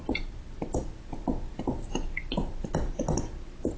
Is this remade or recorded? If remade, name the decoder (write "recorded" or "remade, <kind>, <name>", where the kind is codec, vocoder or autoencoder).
recorded